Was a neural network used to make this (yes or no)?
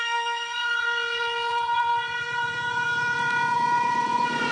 yes